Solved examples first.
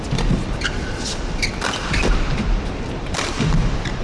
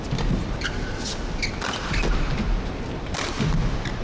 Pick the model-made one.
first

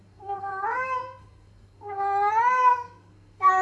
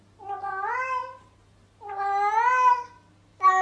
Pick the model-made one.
first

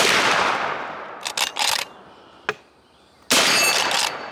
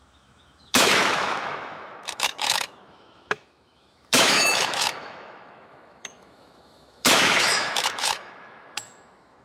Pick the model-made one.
second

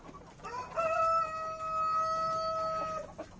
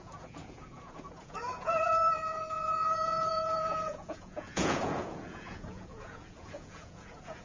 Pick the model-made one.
second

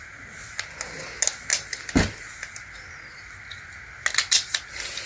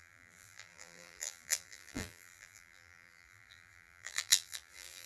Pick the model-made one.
second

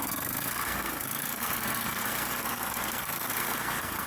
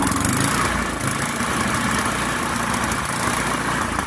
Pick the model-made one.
first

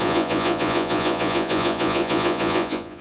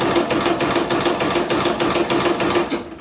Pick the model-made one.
first